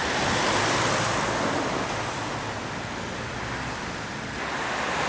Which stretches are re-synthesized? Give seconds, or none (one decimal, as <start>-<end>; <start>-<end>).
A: none